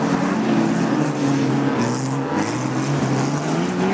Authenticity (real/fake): real